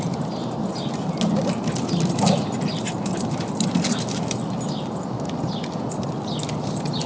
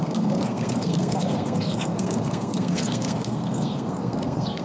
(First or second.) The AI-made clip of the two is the second